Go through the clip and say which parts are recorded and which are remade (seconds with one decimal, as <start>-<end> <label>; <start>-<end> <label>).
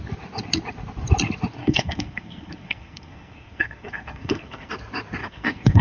0.0-1.6 recorded; 1.6-4.7 remade; 4.7-5.2 recorded; 5.2-5.8 remade